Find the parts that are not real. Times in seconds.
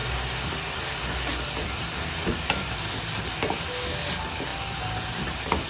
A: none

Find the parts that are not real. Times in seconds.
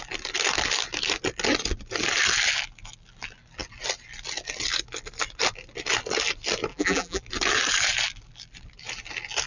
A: 6.7-7.2 (vocoder, BigVGAN v2)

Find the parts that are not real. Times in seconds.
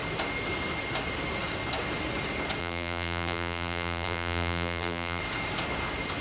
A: 2.6-5.2 (vocoder, BigVGAN v2)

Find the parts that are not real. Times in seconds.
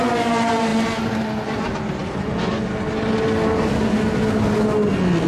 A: none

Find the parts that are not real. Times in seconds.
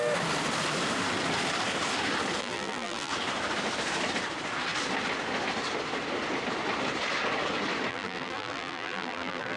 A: 2.4-3.1 (vocoder, BigVGAN v2); 7.9-9.6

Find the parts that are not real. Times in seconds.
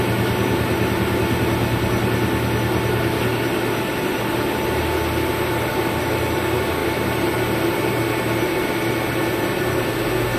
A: none